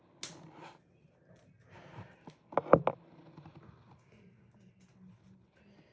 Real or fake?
real